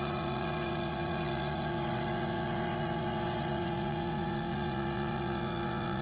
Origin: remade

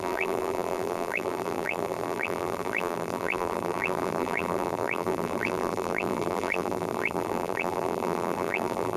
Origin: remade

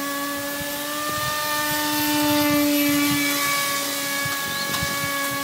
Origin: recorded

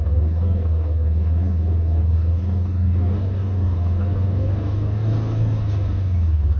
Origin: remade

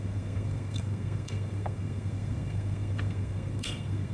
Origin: remade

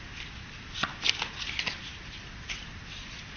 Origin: recorded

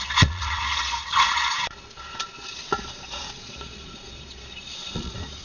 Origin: remade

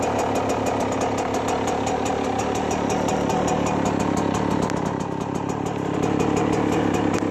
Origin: recorded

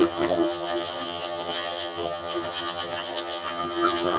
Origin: remade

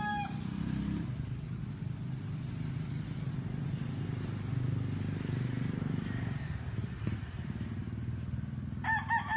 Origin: recorded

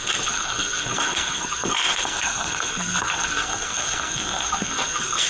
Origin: remade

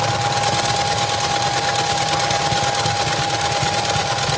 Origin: recorded